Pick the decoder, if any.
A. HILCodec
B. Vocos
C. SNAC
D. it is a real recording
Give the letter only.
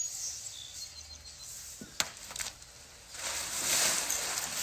D